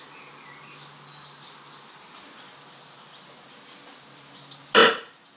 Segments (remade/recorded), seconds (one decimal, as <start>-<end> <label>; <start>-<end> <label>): 0.0-5.4 recorded